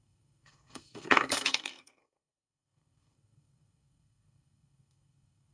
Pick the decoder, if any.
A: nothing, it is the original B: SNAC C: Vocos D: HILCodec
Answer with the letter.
B